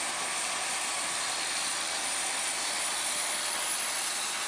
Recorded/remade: recorded